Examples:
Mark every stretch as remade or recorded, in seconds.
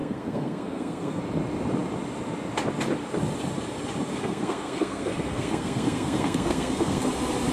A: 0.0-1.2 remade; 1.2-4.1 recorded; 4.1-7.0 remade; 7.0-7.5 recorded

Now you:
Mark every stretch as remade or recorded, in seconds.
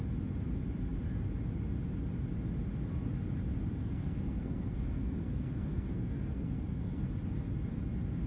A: 0.0-3.8 recorded; 3.8-7.1 remade; 7.1-8.3 recorded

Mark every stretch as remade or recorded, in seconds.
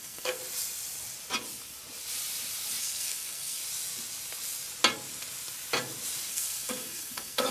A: 0.0-0.4 remade; 0.4-2.8 recorded; 2.8-3.6 remade; 3.6-6.3 recorded; 6.3-7.5 remade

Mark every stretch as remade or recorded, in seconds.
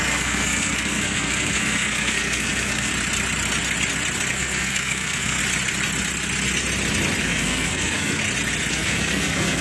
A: 0.0-2.9 remade; 2.9-4.3 recorded; 4.3-5.4 remade; 5.4-7.2 recorded; 7.2-8.2 remade; 8.2-8.7 recorded; 8.7-9.6 remade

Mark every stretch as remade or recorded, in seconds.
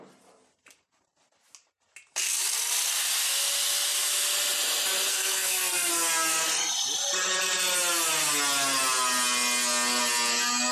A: 0.0-5.1 recorded; 5.1-5.9 remade; 5.9-10.7 recorded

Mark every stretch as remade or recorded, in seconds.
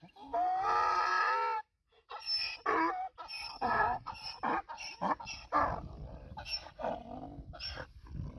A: 0.0-3.5 recorded; 3.5-4.1 remade; 4.1-8.4 recorded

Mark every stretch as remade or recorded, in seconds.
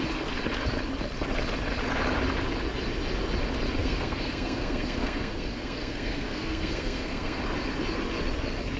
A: 0.0-3.8 recorded; 3.8-7.4 remade; 7.4-8.8 recorded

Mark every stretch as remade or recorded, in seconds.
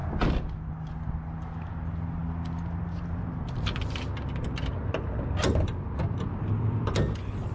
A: 0.0-7.5 recorded